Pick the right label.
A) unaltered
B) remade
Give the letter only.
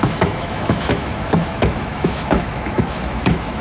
B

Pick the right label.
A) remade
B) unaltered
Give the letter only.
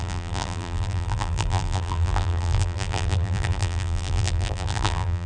A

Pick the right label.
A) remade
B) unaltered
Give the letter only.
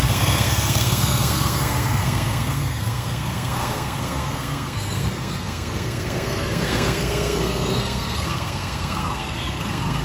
A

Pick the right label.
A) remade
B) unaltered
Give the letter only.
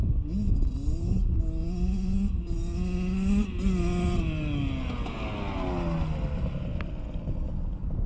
B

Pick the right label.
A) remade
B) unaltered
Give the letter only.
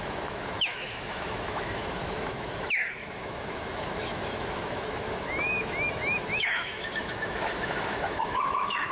A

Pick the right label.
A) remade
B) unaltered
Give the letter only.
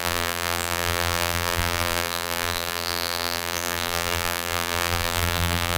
A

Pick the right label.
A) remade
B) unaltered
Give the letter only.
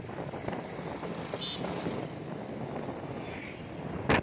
B